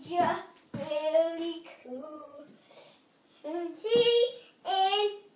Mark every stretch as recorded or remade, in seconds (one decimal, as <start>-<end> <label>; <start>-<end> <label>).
0.0-1.8 recorded; 1.8-2.4 remade; 2.4-5.4 recorded